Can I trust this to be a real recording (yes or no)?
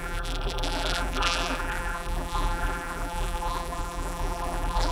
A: no